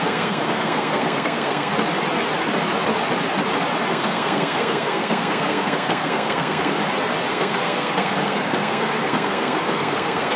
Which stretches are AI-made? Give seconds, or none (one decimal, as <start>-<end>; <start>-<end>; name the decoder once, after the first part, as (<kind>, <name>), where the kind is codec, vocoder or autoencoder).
0.0-1.7 (codec, SNAC); 3.9-6.8; 7.3-10.4